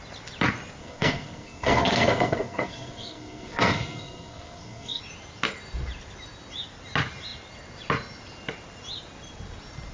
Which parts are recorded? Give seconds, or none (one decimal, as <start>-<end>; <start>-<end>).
0.0-0.8; 5.0-9.9